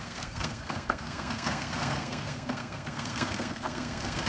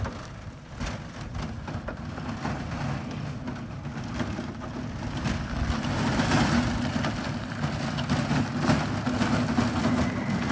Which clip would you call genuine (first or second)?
second